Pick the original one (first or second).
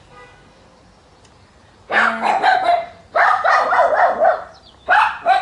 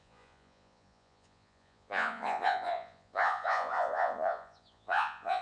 first